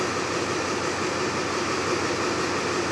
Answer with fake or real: real